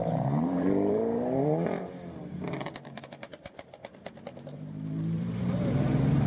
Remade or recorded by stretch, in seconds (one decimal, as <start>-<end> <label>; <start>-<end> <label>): 0.0-6.3 remade